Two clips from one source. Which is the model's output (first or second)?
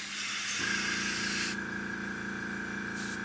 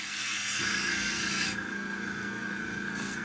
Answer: second